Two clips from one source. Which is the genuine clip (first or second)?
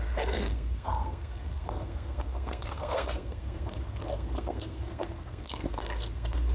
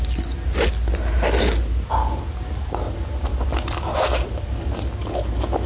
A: second